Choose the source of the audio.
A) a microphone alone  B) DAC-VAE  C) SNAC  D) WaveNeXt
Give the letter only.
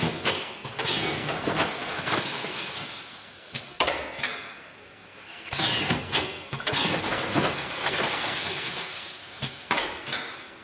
C